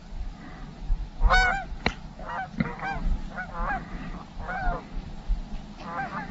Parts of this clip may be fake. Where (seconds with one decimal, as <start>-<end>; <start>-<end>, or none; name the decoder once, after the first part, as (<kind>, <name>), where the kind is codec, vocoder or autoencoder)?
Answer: none